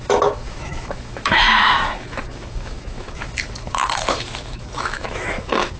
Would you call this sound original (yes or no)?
no